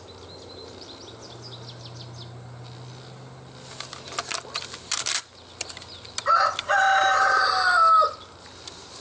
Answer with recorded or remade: recorded